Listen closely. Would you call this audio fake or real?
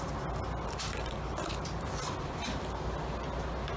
real